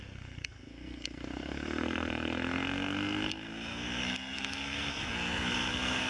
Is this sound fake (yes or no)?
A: yes